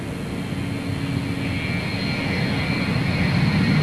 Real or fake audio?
real